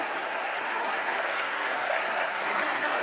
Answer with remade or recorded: remade